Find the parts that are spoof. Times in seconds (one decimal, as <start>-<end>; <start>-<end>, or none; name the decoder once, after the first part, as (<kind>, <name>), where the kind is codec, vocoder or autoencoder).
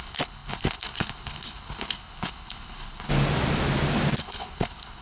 0.0-3.1 (codec, HILCodec); 4.2-5.0